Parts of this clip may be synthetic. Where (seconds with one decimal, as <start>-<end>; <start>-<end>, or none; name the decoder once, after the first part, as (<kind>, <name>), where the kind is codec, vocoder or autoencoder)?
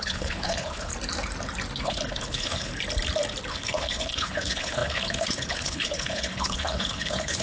0.0-0.9 (codec, HILCodec); 1.8-2.7; 3.5-7.4